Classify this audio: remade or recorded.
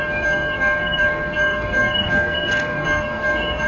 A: remade